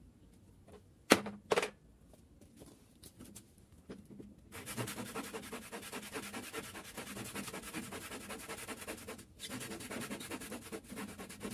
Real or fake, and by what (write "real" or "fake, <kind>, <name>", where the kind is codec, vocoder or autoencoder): real